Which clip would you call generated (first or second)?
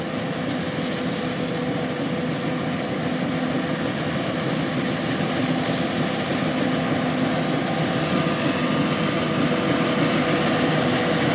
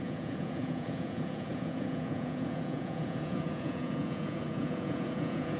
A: second